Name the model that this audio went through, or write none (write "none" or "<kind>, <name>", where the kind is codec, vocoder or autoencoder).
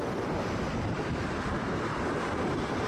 none